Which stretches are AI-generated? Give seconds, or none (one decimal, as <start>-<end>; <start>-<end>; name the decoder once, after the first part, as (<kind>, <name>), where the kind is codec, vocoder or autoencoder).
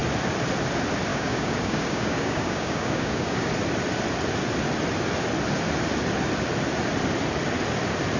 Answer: 1.1-3.5 (codec, DAC)